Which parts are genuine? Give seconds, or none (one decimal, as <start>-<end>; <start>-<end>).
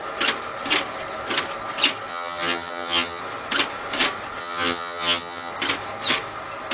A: 0.0-2.1; 3.2-4.4; 5.5-6.7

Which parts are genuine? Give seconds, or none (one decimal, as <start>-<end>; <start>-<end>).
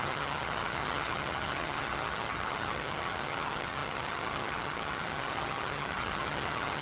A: none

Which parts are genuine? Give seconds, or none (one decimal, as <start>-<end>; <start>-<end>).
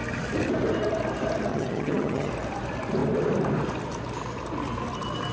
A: 0.0-1.5; 2.3-5.3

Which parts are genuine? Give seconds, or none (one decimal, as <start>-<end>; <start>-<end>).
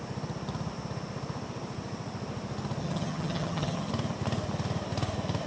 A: 0.0-2.8; 3.9-5.5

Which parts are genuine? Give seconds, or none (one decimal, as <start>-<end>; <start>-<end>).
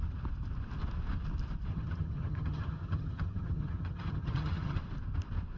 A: 0.0-1.7; 4.8-5.6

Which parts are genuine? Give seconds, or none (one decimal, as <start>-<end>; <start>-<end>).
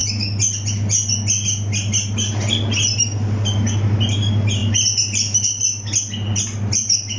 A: 0.0-7.2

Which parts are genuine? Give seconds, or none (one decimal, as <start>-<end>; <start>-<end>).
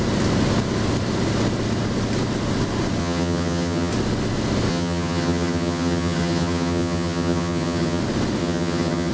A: 0.0-3.0; 3.9-4.7; 8.0-8.4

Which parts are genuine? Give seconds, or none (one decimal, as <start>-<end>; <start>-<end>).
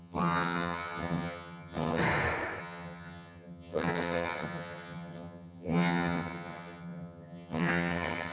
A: 2.0-2.6